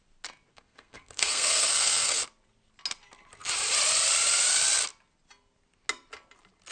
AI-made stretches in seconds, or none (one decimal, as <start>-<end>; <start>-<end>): 0.5-2.2